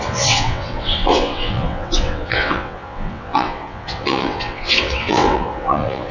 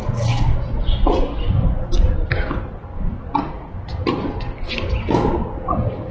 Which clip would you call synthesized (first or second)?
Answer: first